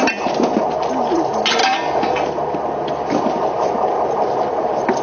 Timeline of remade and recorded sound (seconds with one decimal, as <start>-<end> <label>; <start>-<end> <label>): 0.0-5.0 recorded